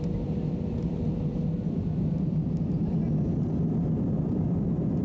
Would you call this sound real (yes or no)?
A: yes